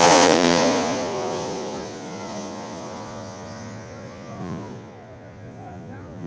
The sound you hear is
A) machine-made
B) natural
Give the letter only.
A